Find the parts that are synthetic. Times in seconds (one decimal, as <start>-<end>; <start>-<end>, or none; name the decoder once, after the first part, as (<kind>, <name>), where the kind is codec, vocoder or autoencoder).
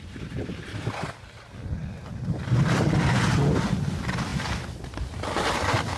none